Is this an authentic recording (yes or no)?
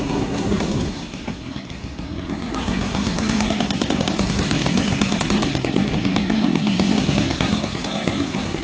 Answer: no